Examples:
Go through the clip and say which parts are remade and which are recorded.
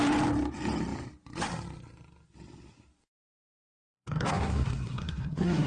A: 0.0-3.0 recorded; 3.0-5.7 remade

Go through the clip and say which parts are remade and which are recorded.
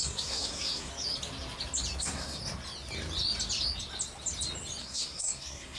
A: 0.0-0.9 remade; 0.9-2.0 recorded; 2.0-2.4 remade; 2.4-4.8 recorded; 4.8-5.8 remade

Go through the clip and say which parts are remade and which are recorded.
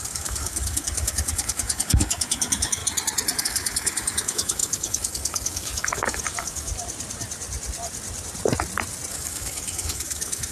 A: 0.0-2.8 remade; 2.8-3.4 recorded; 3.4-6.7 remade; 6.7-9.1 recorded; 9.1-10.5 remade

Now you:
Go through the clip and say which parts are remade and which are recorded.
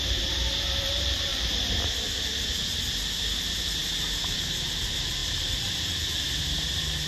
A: 0.0-1.3 remade; 1.3-3.4 recorded; 3.4-7.1 remade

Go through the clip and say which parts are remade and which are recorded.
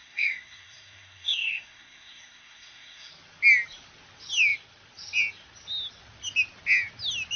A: 0.0-3.1 remade; 3.1-7.4 recorded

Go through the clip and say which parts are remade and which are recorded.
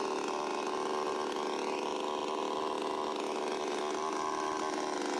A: 0.0-5.2 recorded